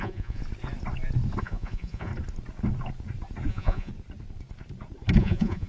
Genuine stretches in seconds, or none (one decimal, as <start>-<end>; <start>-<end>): 0.4-1.4; 2.1-3.5; 3.9-5.2